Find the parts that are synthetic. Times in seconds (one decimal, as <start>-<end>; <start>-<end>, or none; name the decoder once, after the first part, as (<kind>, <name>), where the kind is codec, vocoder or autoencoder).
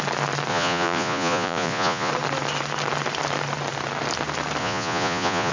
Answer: 0.5-2.1 (vocoder, Vocos); 4.6-5.5